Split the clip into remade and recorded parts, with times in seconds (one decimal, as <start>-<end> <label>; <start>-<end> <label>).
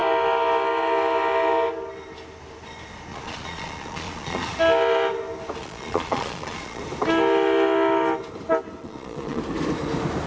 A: 0.0-3.1 recorded; 3.1-4.6 remade; 4.6-5.6 recorded; 5.6-6.8 remade; 6.8-8.8 recorded; 8.8-9.4 remade; 9.4-10.3 recorded